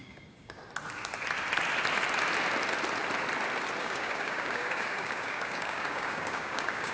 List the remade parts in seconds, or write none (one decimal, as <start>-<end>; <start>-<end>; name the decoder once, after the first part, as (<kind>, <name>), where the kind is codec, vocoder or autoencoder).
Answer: 0.0-0.6 (codec, DAC); 3.8-6.9